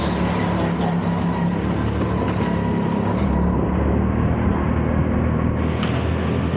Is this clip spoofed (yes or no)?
no